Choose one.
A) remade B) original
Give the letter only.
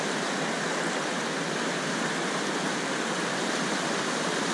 B